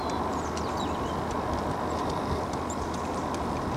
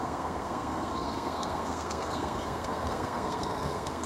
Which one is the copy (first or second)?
second